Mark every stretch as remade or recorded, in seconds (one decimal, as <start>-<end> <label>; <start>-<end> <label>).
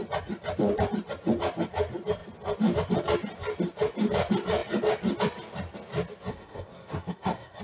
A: 0.0-6.3 recorded; 6.3-7.6 remade